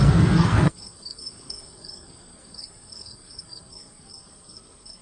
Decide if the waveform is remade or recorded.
remade